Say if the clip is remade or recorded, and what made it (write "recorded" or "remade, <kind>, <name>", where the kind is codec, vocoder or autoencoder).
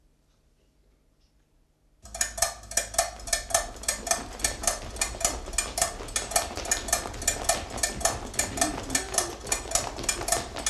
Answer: recorded